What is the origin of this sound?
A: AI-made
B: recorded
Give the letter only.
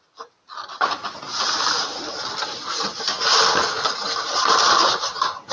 B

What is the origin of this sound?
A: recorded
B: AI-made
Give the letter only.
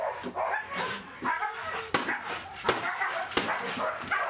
A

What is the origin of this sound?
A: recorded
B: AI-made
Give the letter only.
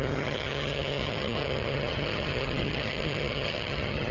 B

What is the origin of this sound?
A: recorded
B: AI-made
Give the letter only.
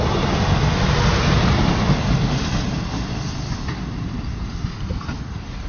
A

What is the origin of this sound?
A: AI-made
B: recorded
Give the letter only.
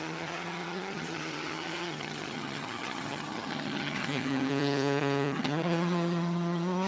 A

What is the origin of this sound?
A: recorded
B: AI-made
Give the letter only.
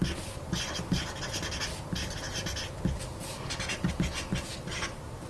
A